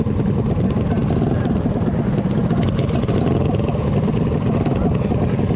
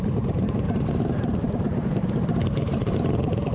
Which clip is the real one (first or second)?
first